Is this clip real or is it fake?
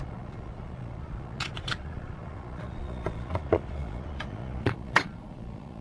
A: fake